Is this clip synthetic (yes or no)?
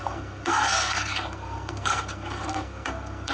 yes